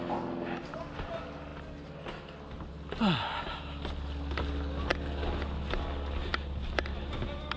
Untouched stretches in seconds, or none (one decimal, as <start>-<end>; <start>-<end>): 0.0-7.6